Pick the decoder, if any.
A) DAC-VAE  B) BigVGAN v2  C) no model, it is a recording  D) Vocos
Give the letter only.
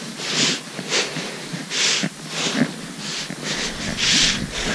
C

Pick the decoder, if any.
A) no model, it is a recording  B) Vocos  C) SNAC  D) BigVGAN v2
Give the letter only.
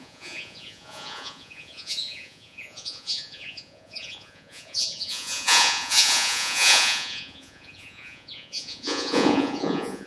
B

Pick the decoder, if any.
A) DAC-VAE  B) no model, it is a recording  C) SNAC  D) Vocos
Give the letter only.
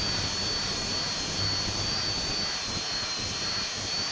B